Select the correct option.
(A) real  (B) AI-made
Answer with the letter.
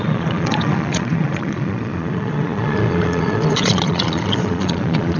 B